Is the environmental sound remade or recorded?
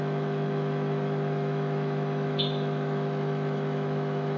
remade